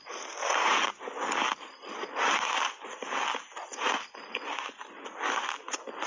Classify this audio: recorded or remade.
recorded